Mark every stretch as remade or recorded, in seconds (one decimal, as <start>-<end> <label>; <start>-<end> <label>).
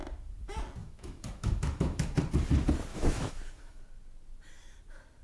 0.0-0.8 recorded; 0.8-2.2 remade; 2.2-2.9 recorded; 2.9-3.8 remade; 3.8-5.2 recorded